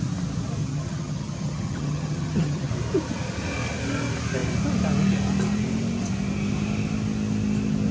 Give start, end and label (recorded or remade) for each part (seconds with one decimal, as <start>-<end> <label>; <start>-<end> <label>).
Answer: 0.0-0.6 recorded; 0.6-2.7 remade; 2.7-7.9 recorded